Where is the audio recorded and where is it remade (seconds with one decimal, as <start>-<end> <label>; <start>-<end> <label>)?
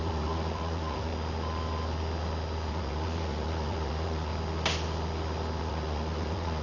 0.0-1.1 remade; 1.1-2.7 recorded; 2.7-4.3 remade; 4.3-5.6 recorded; 5.6-6.6 remade